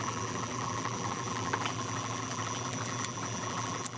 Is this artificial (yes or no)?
yes